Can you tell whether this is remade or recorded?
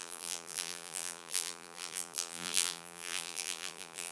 remade